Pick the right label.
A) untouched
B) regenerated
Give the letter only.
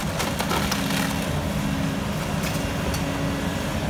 A